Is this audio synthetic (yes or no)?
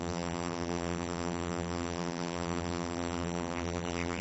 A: yes